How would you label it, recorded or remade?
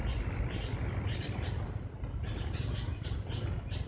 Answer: recorded